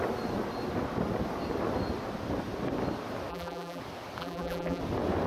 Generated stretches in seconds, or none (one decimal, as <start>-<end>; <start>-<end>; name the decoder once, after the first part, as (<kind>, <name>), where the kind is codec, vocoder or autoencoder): 3.3-3.8 (vocoder, BigVGAN v2); 4.2-4.8